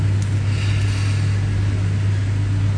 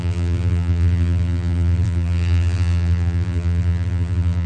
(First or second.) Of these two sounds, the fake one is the second